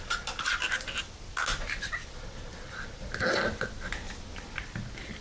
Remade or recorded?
recorded